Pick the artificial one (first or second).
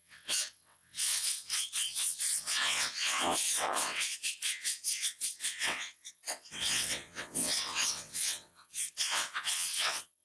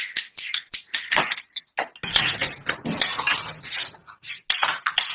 first